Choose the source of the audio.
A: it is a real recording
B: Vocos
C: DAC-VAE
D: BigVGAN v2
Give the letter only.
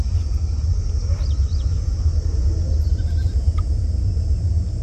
A